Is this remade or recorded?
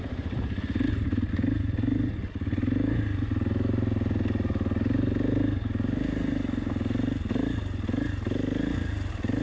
recorded